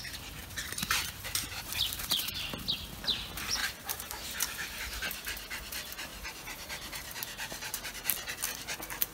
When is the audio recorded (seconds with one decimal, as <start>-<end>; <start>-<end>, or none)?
0.0-0.4; 2.3-3.6; 4.8-6.1; 8.4-9.1